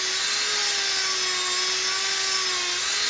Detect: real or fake real